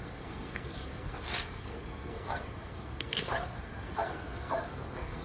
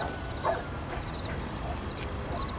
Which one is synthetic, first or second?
first